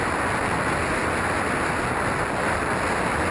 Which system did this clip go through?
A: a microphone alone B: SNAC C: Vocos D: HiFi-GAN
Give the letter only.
A